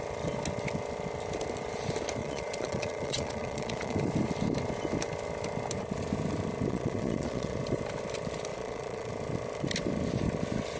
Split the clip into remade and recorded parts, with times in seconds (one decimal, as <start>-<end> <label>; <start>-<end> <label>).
0.0-2.2 recorded; 2.2-4.0 remade; 4.0-6.7 recorded; 6.7-7.6 remade; 7.6-8.5 recorded; 8.5-9.1 remade; 9.1-10.8 recorded